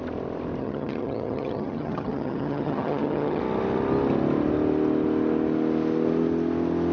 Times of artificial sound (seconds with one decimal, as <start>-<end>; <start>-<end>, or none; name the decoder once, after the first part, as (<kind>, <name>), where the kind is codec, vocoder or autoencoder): 0.6-3.4 (vocoder, HiFi-GAN)